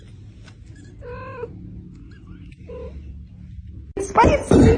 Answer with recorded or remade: recorded